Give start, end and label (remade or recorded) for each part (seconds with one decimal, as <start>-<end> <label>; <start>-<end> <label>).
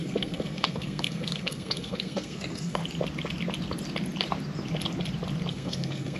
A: 0.0-2.8 remade; 2.8-5.5 recorded; 5.5-6.2 remade